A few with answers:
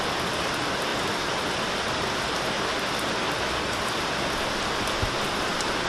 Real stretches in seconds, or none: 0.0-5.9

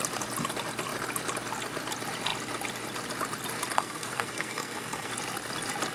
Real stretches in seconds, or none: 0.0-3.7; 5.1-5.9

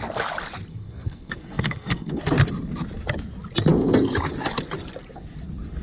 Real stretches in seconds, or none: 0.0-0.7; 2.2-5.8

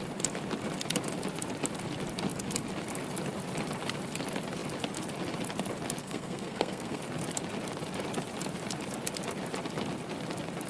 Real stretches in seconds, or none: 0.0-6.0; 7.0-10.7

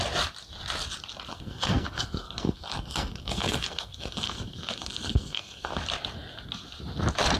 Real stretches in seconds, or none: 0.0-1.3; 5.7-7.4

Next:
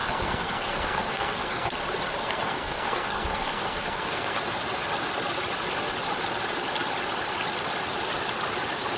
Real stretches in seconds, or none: 1.7-2.2; 4.4-9.0